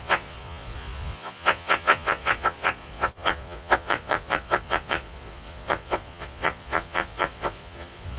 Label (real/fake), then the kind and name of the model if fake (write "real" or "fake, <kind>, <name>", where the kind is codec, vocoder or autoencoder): fake, vocoder, Vocos